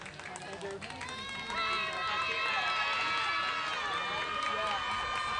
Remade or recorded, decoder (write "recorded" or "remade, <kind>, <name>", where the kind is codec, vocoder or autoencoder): recorded